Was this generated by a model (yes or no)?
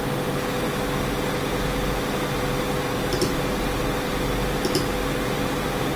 no